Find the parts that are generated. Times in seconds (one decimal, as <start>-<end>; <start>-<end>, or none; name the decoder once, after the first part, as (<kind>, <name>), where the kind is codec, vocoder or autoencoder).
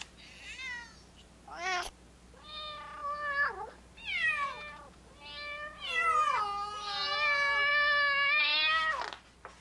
none